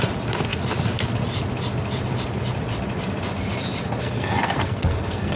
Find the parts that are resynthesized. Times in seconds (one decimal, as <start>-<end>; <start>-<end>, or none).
4.0-5.4

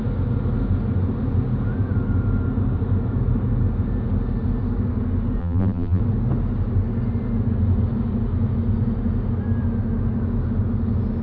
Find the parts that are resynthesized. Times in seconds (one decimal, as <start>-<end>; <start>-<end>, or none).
5.4-6.0